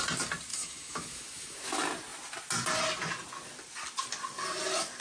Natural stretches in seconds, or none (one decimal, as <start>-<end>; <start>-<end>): 0.0-0.5; 1.7-5.0